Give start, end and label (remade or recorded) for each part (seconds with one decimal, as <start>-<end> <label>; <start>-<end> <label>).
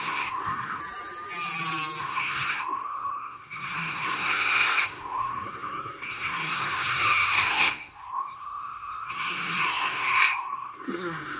0.0-0.8 remade; 0.8-2.0 recorded; 2.0-11.4 remade